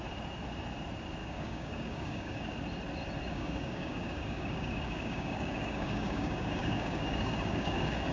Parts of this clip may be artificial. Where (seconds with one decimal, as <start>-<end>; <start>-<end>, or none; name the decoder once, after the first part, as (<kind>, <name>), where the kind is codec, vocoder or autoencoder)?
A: 1.2-2.4 (codec, DAC); 3.3-8.1